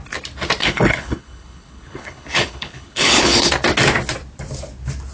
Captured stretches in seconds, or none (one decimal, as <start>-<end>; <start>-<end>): 0.0-0.6; 3.5-5.1